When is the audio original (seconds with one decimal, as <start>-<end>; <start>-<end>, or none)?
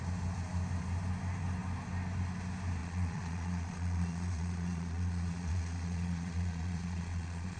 0.0-2.8